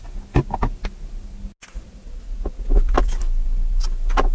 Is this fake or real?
real